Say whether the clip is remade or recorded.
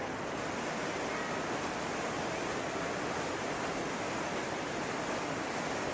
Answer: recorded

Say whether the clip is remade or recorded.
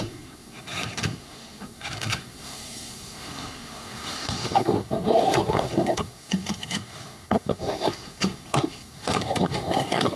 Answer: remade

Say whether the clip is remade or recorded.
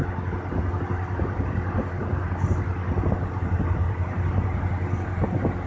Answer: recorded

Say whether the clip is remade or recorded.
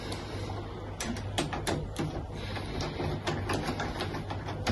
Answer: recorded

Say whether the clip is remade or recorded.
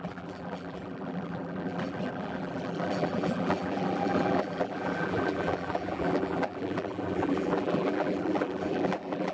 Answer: remade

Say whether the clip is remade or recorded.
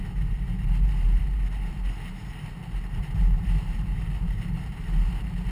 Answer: remade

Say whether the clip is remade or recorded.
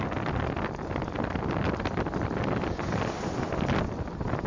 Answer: recorded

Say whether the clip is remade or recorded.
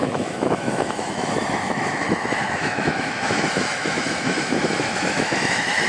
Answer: remade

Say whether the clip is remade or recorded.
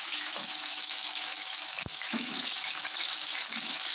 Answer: remade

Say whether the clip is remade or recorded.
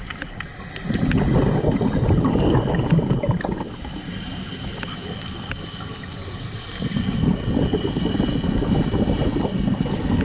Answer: recorded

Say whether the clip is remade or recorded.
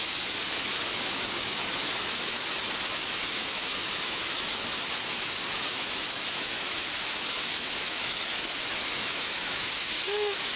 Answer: remade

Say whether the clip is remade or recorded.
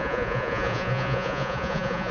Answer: remade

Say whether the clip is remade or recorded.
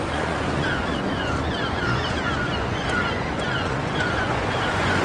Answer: remade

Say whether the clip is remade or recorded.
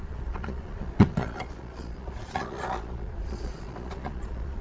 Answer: remade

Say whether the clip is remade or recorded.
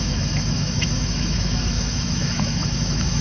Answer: remade